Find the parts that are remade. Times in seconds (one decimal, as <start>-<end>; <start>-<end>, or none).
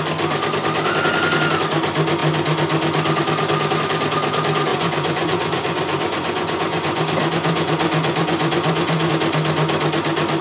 4.7-9.1